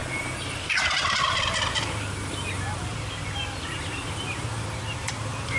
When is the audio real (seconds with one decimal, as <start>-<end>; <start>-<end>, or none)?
0.0-5.6